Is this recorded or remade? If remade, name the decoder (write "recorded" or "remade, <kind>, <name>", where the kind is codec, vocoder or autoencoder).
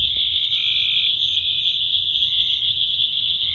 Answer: recorded